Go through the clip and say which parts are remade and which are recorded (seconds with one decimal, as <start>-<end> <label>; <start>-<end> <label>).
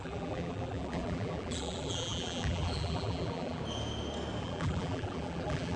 0.0-3.6 remade; 3.6-4.4 recorded; 4.4-5.8 remade